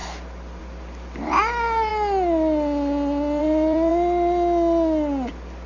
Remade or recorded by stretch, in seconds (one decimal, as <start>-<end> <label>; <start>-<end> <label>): 0.0-0.6 recorded; 0.6-1.9 remade; 1.9-3.4 recorded; 3.4-3.9 remade; 3.9-5.3 recorded; 5.3-5.7 remade